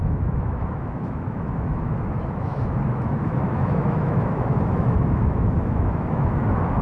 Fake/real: fake